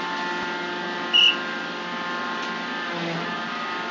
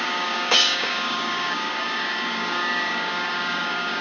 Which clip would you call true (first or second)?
first